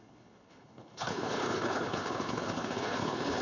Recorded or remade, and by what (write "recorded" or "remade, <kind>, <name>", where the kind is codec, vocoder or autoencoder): remade, codec, HILCodec